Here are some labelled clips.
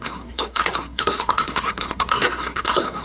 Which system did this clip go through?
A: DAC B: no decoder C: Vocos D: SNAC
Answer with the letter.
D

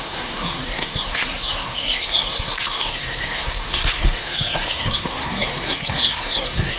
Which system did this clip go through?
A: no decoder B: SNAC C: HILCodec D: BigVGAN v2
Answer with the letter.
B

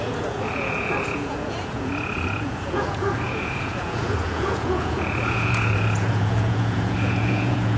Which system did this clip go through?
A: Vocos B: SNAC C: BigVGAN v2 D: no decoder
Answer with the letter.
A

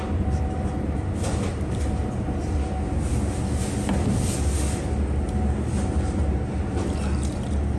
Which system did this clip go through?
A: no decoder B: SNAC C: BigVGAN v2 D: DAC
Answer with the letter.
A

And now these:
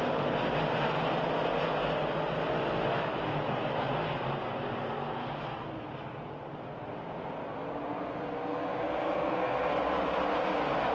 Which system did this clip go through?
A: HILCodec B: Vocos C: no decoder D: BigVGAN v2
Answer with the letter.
C